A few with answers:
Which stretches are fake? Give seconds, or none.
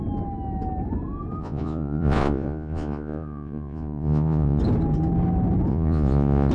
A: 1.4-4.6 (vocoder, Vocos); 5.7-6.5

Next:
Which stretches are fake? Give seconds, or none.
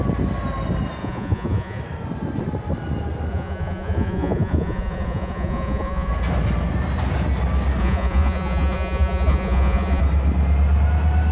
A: 1.0-1.8 (vocoder, Vocos); 3.3-6.1; 7.8-10.0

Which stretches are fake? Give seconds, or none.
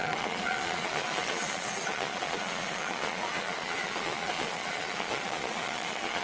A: 0.0-6.2 (vocoder, Vocos)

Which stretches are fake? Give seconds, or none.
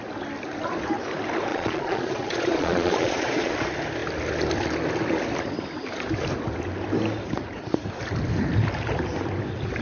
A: 1.5-3.5 (vocoder, Vocos)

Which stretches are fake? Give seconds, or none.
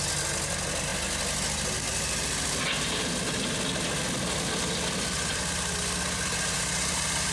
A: none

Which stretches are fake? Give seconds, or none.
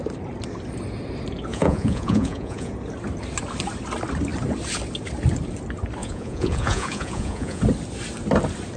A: 1.5-2.7 (vocoder, Vocos); 6.0-7.6